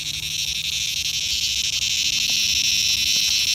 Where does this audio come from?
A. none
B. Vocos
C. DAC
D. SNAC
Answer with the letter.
A